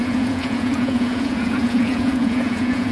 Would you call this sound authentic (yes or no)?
no